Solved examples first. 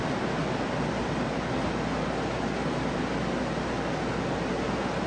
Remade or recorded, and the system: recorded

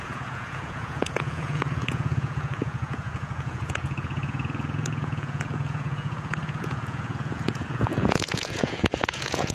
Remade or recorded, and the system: remade, vocoder, Vocos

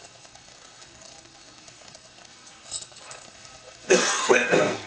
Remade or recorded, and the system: remade, codec, SNAC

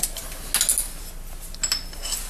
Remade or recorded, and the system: recorded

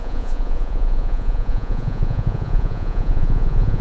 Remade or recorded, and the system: remade, vocoder, Vocos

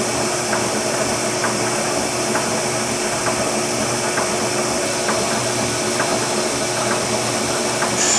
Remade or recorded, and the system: recorded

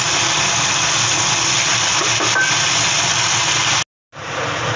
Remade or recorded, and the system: recorded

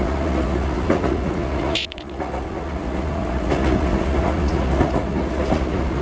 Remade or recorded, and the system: remade, vocoder, Vocos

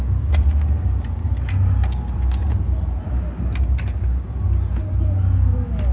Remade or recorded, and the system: recorded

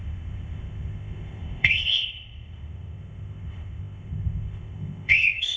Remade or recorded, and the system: remade, codec, ZipCodec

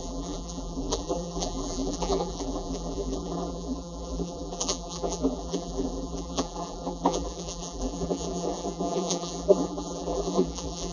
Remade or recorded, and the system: remade, vocoder, BigVGAN v2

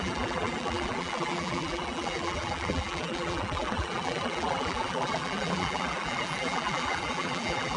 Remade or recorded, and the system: remade, vocoder, BigVGAN v2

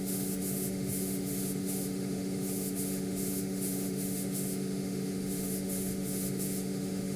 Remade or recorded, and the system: remade, autoencoder, DAC-VAE